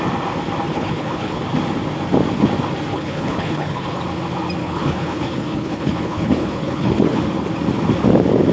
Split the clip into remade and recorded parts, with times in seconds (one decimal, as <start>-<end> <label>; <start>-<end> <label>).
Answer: 0.0-0.7 recorded; 0.7-1.4 remade; 1.4-2.9 recorded; 2.9-4.0 remade; 4.0-4.6 recorded; 4.6-7.2 remade; 7.2-8.5 recorded